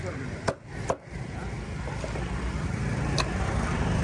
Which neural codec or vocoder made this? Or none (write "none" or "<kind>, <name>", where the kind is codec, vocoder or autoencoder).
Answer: vocoder, BigVGAN v2